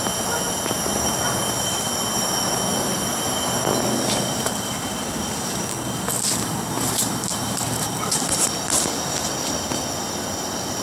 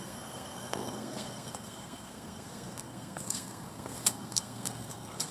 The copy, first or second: second